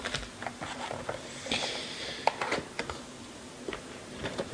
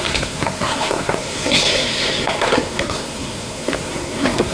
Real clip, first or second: first